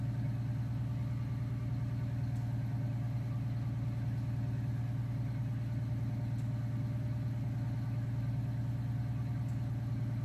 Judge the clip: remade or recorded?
recorded